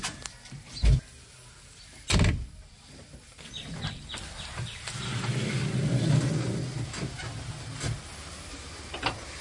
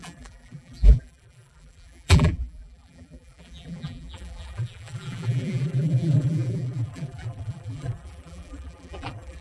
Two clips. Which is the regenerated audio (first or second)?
second